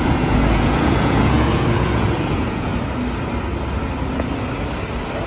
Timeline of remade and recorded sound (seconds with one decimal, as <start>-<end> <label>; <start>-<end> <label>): 0.0-2.7 remade; 2.7-5.3 recorded